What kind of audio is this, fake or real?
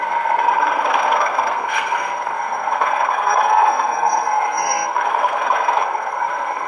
fake